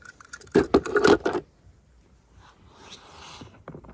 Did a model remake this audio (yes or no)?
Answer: no